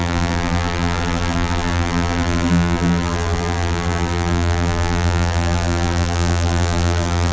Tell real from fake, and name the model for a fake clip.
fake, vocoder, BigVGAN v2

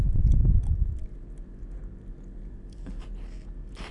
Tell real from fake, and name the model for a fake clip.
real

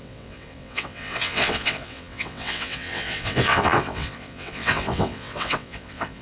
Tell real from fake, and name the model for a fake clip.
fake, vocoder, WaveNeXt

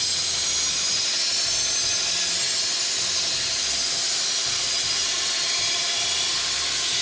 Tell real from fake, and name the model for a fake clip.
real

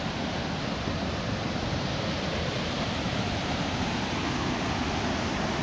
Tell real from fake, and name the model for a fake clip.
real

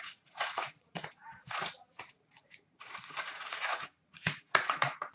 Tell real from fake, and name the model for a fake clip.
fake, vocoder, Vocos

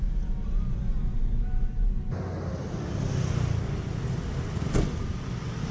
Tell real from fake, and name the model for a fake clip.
real